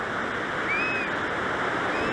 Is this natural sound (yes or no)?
yes